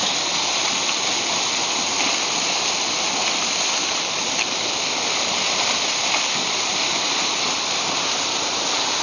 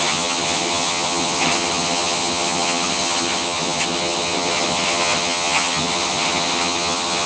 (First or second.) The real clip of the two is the first